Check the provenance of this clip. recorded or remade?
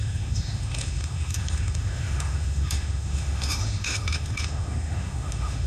remade